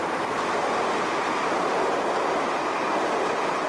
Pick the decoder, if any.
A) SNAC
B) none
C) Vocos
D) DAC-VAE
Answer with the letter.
B